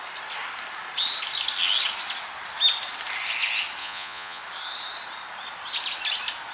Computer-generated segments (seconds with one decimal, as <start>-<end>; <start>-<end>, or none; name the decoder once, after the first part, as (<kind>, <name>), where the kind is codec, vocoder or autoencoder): 3.8-4.4 (vocoder, Vocos)